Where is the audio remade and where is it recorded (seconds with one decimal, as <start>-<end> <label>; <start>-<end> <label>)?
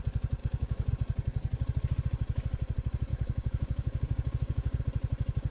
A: 0.0-0.4 recorded; 0.4-0.9 remade; 0.9-3.1 recorded; 3.1-4.8 remade; 4.8-5.5 recorded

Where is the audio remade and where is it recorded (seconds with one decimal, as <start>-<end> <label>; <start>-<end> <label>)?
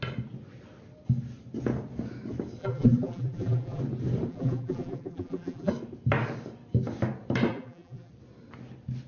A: 0.0-2.6 recorded; 2.6-3.8 remade; 3.8-4.3 recorded; 4.3-5.7 remade; 5.7-7.5 recorded; 7.5-8.1 remade; 8.1-9.1 recorded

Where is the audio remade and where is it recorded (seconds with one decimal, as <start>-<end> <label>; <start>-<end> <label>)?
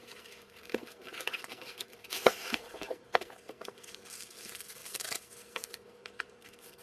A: 0.0-6.8 remade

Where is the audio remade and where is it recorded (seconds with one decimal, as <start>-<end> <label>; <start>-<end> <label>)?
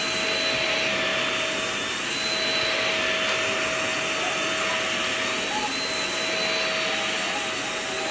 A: 0.0-8.1 recorded